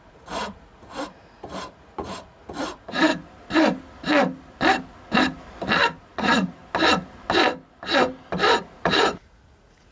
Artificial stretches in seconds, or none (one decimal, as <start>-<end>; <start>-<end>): 0.0-3.1; 6.0-6.6; 8.6-9.9